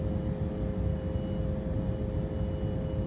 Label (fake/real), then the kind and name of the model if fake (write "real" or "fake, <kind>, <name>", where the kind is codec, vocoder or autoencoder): real